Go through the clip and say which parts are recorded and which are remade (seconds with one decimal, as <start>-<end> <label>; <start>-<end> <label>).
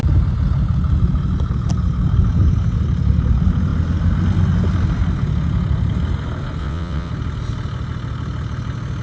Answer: 0.0-6.6 recorded; 6.6-7.1 remade; 7.1-9.0 recorded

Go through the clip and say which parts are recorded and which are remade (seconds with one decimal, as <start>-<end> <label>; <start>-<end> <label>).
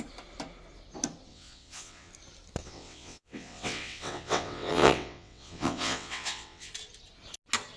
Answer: 0.0-1.3 recorded; 1.3-2.1 remade; 2.1-2.6 recorded; 2.6-6.7 remade; 6.7-7.8 recorded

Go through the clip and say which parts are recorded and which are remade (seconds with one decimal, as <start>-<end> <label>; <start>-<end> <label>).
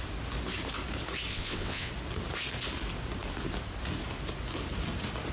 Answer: 0.0-1.3 recorded; 1.3-1.9 remade; 1.9-5.3 recorded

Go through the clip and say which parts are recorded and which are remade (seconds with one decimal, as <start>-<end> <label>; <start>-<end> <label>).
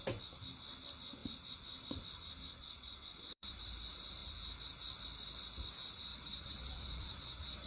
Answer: 0.0-2.6 recorded; 2.6-3.6 remade; 3.6-6.1 recorded; 6.1-7.7 remade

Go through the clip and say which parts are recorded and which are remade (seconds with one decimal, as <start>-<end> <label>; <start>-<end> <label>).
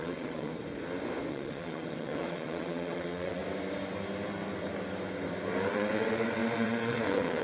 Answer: 0.0-0.5 remade; 0.5-1.3 recorded; 1.3-3.4 remade; 3.4-5.7 recorded; 5.7-7.4 remade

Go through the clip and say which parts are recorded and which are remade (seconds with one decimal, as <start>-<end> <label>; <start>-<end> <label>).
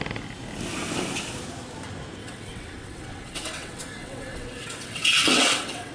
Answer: 0.0-2.2 recorded; 2.2-5.9 remade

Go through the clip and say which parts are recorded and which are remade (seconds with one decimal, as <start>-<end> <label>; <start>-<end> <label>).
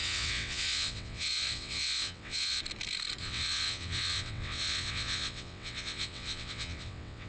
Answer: 0.0-2.6 remade; 2.6-3.2 recorded; 3.2-7.3 remade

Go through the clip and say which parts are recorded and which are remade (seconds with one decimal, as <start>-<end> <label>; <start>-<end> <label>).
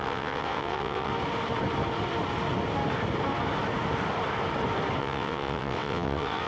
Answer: 0.0-1.1 remade; 1.1-5.0 recorded; 5.0-6.5 remade